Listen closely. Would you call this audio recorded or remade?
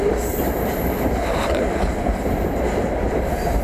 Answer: remade